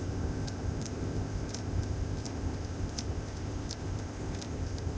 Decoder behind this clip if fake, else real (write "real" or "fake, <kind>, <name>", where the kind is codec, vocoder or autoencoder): fake, codec, ZipCodec